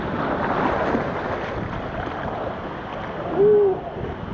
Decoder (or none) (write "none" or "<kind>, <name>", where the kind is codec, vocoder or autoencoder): none